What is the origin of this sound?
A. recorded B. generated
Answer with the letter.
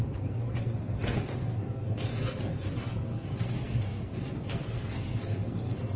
B